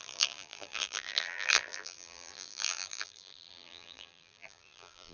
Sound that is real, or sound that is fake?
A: fake